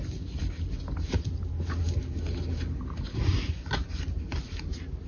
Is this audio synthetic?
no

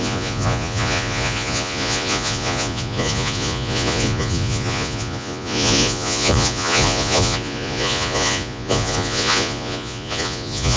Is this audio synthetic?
yes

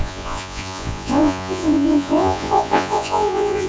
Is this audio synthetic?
yes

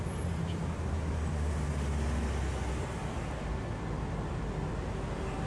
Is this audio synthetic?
no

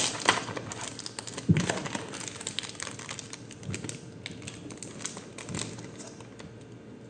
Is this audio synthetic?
no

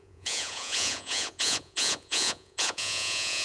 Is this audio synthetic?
yes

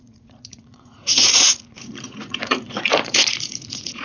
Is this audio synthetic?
yes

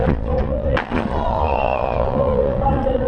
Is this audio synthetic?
yes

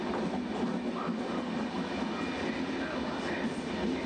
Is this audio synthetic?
no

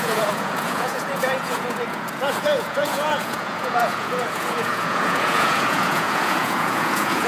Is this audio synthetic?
yes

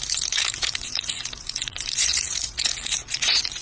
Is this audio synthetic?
yes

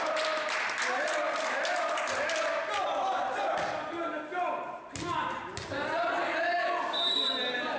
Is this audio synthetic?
no